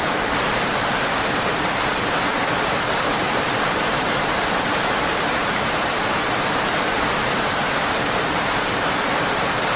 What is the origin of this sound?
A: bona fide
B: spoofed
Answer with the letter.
B